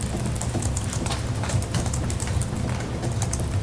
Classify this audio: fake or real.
real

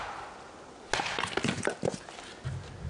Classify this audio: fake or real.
real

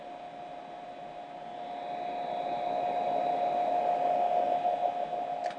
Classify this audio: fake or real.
real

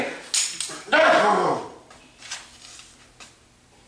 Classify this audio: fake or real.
real